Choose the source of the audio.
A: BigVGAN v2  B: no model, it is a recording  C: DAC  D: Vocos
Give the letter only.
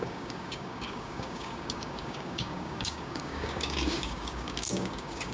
C